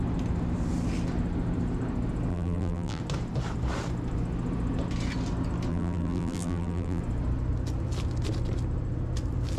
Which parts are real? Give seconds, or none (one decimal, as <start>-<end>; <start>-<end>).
0.0-2.3; 3.0-5.7; 7.0-9.6